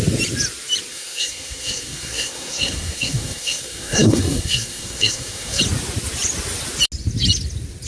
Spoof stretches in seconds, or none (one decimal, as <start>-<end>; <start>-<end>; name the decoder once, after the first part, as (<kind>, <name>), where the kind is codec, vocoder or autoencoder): 0.9-5.6 (codec, SNAC)